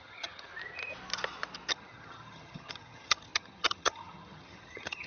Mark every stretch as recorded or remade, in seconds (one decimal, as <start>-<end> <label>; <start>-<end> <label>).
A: 0.0-0.5 remade; 0.5-1.7 recorded; 1.7-5.1 remade